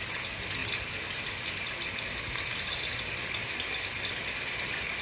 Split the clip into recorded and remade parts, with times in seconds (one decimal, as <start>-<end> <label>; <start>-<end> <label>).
0.0-5.0 recorded